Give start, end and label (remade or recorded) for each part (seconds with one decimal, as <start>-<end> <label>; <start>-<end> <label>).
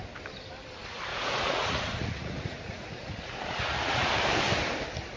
0.0-1.1 recorded; 1.1-4.2 remade; 4.2-5.2 recorded